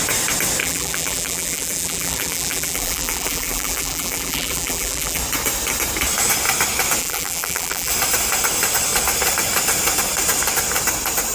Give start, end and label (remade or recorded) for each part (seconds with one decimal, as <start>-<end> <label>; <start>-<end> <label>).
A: 0.0-0.6 recorded; 0.6-5.2 remade; 5.2-7.0 recorded; 7.0-7.9 remade; 7.9-11.3 recorded